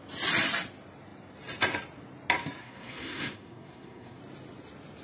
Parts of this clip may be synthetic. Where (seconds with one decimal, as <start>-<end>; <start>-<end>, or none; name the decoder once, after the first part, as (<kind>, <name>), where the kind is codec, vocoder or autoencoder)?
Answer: 2.6-4.2 (codec, SNAC)